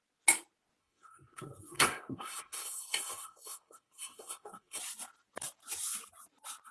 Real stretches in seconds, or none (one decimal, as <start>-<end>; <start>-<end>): 0.0-0.8; 4.8-6.7